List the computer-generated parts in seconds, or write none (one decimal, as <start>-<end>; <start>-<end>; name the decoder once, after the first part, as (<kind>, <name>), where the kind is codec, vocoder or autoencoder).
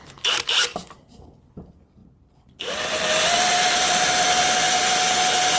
none